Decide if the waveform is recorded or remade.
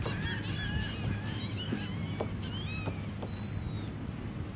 recorded